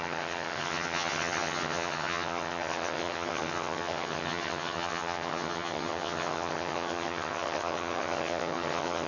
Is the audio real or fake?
fake